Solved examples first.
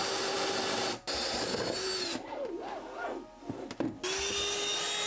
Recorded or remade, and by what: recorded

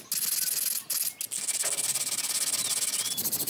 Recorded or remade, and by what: recorded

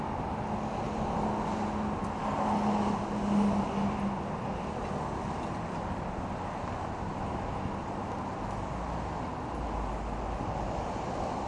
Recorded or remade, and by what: recorded